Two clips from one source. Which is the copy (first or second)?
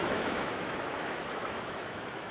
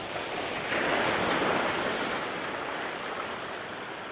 first